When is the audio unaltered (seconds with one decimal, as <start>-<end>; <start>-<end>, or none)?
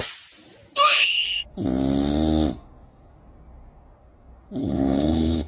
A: 0.0-0.9; 1.4-4.6